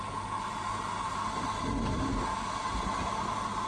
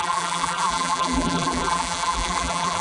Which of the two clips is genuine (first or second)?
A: first